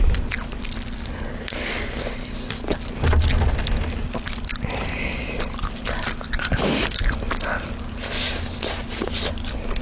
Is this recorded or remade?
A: recorded